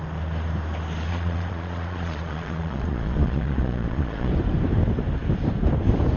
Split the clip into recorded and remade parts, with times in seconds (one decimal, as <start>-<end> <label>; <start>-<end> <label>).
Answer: 0.0-1.1 recorded; 1.1-4.3 remade; 4.3-6.2 recorded